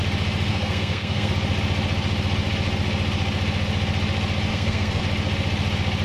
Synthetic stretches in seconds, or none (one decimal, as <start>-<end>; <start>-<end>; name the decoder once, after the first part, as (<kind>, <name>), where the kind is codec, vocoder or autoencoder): 0.5-1.3 (codec, SNAC); 4.5-5.0